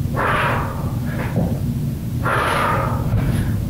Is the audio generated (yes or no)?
no